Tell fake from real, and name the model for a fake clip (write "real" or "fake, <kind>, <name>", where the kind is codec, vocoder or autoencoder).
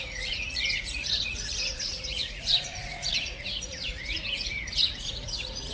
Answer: fake, vocoder, Vocos